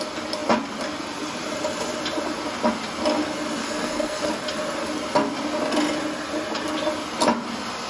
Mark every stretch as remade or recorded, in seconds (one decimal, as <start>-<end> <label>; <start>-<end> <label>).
0.0-3.6 recorded; 3.6-4.3 remade; 4.3-7.9 recorded

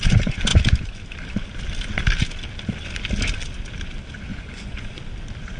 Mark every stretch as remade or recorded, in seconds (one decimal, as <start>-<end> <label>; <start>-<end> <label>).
0.0-4.3 recorded; 4.3-5.0 remade; 5.0-5.6 recorded

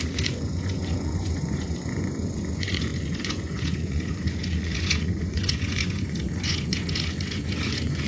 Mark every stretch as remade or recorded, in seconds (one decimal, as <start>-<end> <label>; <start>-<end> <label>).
0.0-8.1 remade